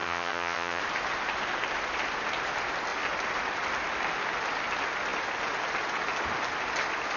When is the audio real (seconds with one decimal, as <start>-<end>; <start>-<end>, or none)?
0.8-7.2

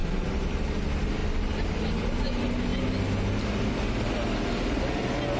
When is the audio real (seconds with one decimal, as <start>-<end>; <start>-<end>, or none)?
0.6-5.4

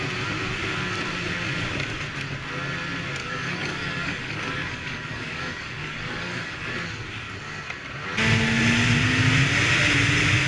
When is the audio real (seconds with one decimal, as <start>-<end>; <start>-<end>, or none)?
0.0-3.2; 6.7-10.5